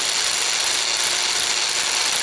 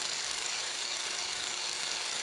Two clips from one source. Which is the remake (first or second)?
second